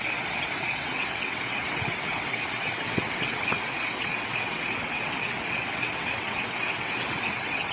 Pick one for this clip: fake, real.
fake